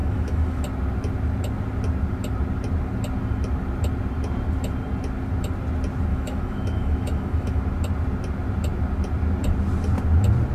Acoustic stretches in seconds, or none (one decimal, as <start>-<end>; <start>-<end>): 0.6-6.1; 7.6-10.5